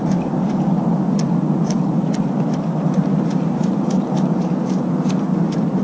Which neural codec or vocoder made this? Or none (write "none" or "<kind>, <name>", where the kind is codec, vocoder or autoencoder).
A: none